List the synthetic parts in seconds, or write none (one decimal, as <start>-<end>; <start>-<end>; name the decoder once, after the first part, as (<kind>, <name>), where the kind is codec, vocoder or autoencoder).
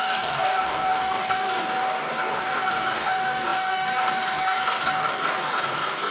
0.0-6.1 (codec, DAC)